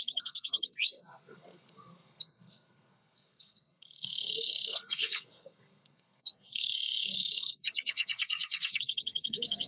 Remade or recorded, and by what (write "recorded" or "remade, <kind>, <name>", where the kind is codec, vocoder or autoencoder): remade, codec, SNAC